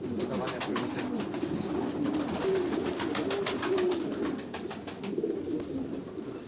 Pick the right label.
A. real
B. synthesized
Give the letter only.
A